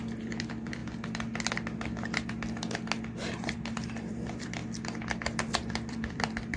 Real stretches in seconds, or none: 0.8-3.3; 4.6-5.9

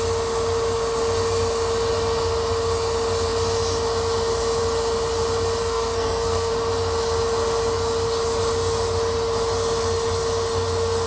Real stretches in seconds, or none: 0.0-5.6; 6.5-11.1

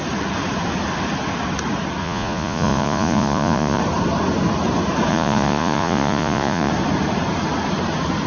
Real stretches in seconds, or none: 0.0-2.0; 3.8-5.1; 6.7-8.3

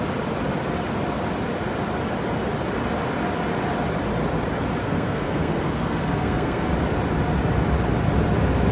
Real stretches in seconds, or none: 0.0-4.8; 6.7-8.7

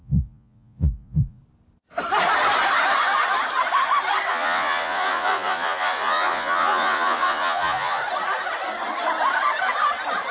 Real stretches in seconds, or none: 1.4-4.3; 8.0-10.3

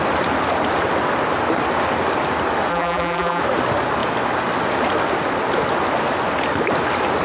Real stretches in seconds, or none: 0.0-2.7; 3.4-7.2

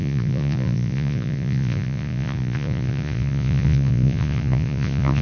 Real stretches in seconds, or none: none

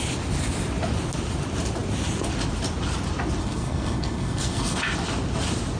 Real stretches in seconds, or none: 0.0-3.4; 4.8-5.8